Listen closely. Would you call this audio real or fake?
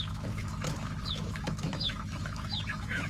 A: fake